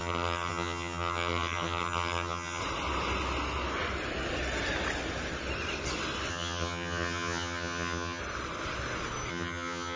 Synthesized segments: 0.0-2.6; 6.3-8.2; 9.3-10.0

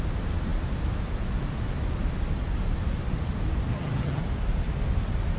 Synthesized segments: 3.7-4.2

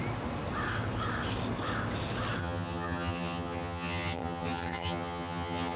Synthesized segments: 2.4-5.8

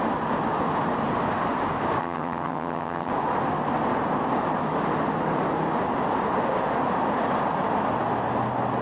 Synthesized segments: 2.0-3.1

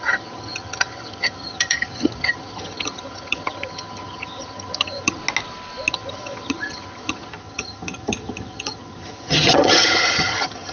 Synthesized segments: 0.0-5.2; 5.9-10.7

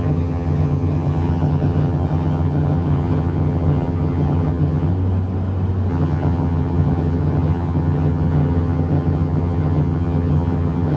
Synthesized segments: 0.0-4.9; 5.9-11.0

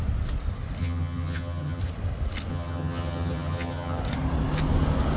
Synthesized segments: 0.8-1.8; 2.5-4.0

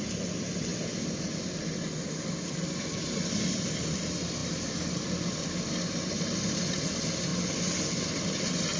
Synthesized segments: none